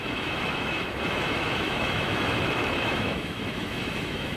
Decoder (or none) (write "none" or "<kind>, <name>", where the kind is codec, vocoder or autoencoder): autoencoder, DAC-VAE